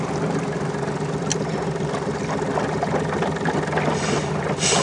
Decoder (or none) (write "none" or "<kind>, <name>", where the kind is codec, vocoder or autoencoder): none